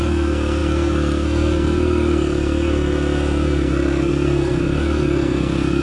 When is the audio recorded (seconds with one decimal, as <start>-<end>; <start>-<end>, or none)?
none